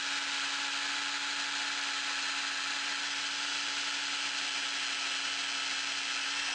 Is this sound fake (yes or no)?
no